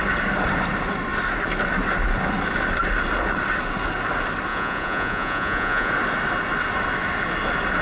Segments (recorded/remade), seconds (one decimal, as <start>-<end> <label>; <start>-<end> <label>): 0.0-4.5 recorded; 4.5-5.9 remade; 5.9-7.8 recorded